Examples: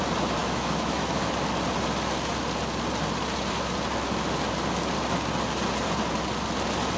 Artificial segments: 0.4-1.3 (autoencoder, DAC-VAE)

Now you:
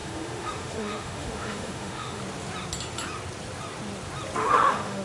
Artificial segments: 0.0-2.2 (autoencoder, DAC-VAE); 4.4-5.0